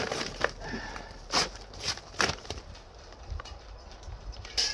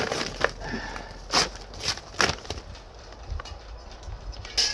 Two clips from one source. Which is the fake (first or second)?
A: first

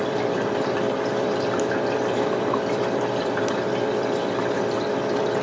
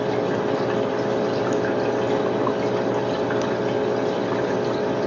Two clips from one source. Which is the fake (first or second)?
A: first